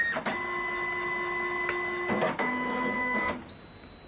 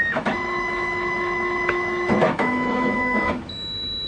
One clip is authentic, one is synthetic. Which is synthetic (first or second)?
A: second